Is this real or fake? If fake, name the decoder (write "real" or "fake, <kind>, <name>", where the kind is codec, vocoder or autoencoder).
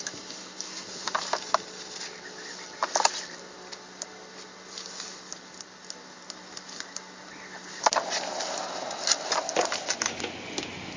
real